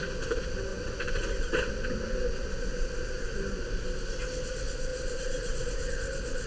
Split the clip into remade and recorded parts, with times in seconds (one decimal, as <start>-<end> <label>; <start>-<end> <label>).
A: 0.0-0.7 recorded; 0.7-1.7 remade; 1.7-2.7 recorded; 2.7-3.8 remade; 3.8-4.9 recorded; 4.9-5.9 remade; 5.9-6.5 recorded